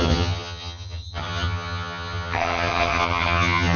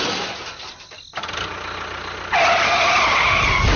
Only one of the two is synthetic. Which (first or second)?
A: first